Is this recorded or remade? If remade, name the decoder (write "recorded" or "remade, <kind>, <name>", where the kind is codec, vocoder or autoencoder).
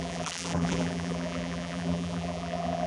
remade, vocoder, BigVGAN v2